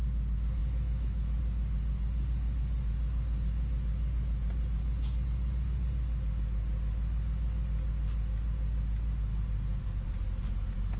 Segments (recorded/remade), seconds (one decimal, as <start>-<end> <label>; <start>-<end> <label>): 0.0-0.6 recorded; 0.6-1.4 remade; 1.4-11.0 recorded